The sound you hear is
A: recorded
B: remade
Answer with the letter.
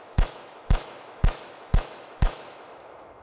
B